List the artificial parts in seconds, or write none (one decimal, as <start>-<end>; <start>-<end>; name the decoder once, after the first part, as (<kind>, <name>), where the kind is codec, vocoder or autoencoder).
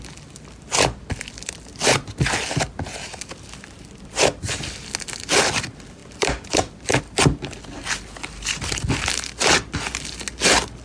none